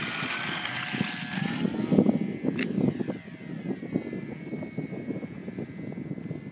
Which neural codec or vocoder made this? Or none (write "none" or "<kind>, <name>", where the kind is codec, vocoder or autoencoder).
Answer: none